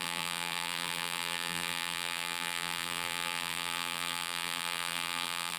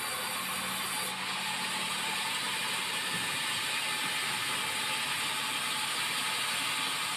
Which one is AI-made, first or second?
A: first